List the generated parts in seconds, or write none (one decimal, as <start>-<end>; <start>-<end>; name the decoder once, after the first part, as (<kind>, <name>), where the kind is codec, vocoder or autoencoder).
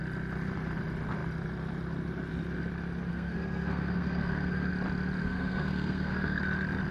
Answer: 3.1-4.7 (codec, SNAC); 5.2-6.4